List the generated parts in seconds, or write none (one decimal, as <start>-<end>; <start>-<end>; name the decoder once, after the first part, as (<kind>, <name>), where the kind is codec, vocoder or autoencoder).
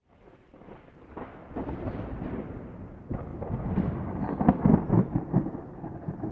0.0-2.8 (vocoder, BigVGAN v2); 3.3-4.0